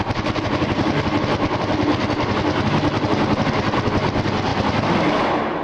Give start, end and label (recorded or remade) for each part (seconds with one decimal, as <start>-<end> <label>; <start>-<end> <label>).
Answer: 0.0-5.6 recorded